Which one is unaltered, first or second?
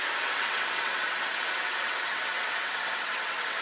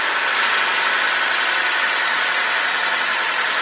second